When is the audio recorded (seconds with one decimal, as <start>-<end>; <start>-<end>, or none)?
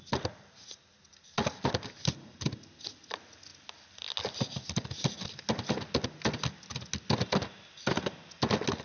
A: 0.0-8.8